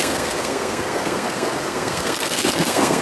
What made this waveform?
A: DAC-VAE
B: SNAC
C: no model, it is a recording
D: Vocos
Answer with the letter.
B